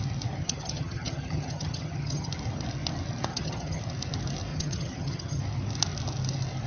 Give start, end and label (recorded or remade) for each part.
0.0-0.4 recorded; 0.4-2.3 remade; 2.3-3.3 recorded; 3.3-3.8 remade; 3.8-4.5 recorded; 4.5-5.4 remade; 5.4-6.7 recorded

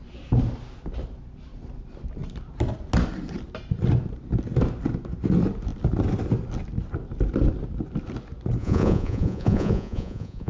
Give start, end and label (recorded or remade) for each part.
0.0-8.6 recorded; 8.6-10.5 remade

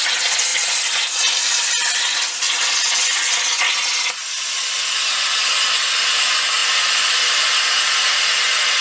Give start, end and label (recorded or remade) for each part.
0.0-0.5 recorded; 0.5-3.6 remade; 3.6-6.6 recorded; 6.6-7.5 remade; 7.5-8.8 recorded

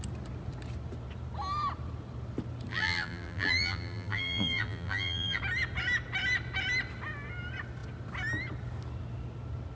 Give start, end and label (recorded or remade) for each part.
0.0-2.7 recorded; 2.7-5.4 remade; 5.4-9.8 recorded

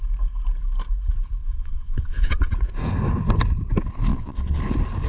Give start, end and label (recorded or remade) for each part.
0.0-1.4 recorded; 1.4-2.5 remade; 2.5-4.1 recorded; 4.1-4.6 remade; 4.6-5.1 recorded

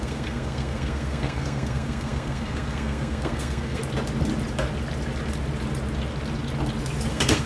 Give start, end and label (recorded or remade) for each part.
0.0-3.8 remade; 3.8-7.1 recorded; 7.1-7.5 remade